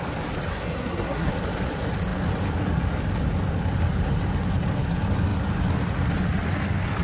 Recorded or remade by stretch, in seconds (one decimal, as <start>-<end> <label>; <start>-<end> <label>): 0.0-0.5 recorded; 0.5-1.3 remade; 1.3-7.0 recorded